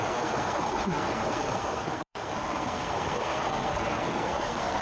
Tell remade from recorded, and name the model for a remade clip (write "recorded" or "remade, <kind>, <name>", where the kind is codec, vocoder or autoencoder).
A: remade, codec, SNAC